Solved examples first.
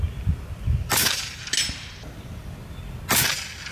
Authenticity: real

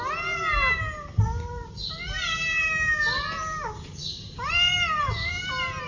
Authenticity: real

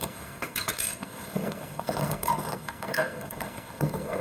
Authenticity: fake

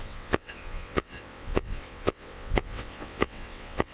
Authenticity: fake